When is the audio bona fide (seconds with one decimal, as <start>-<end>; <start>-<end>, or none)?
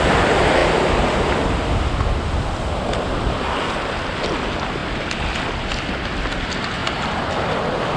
0.0-6.8; 7.3-8.0